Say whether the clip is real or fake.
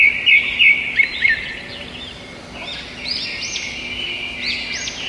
real